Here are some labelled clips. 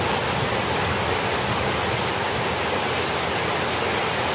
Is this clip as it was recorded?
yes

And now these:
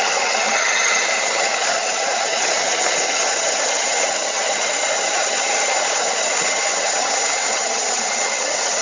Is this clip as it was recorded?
no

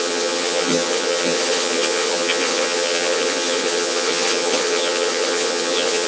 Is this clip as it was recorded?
no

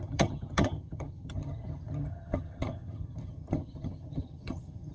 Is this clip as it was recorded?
no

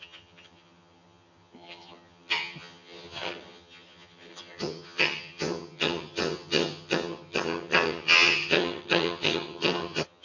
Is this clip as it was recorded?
no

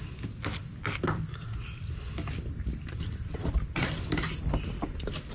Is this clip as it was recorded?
yes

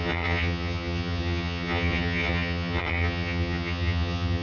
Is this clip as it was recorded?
no